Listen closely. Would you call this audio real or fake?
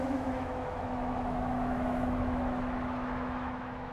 fake